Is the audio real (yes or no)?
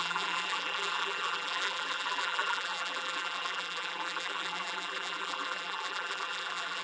no